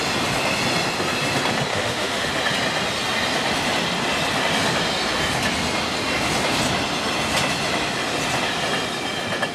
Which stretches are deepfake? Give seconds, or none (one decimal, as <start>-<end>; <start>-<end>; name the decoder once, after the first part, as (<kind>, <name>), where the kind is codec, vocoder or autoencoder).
1.7-2.3 (autoencoder, DAC-VAE)